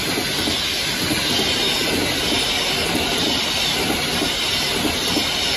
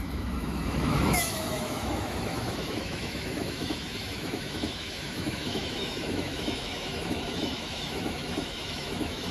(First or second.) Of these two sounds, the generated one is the second